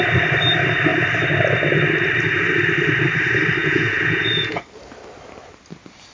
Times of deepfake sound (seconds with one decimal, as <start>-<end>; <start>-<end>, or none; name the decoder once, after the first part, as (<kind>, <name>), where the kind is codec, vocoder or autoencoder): 3.6-4.6 (vocoder, Vocos)